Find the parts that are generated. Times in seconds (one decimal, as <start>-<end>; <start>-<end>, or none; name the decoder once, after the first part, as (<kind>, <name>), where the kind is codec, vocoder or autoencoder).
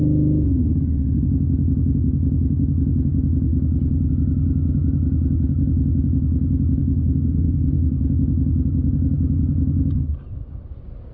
6.8-8.0 (codec, SNAC)